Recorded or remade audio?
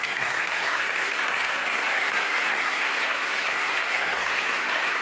remade